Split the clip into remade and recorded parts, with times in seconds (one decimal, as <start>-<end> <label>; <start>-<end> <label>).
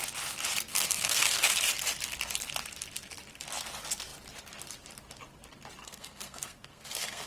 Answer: 0.0-0.7 recorded; 0.7-1.5 remade; 1.5-5.8 recorded; 5.8-7.3 remade